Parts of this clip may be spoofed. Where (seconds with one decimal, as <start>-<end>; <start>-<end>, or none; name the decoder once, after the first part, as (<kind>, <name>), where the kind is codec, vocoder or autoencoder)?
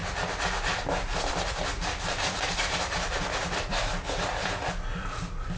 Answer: 1.3-5.6 (vocoder, BigVGAN v2)